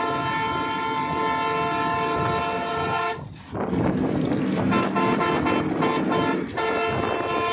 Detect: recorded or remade recorded